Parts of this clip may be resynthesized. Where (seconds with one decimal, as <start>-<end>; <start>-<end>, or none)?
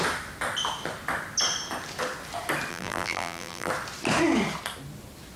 2.7-3.7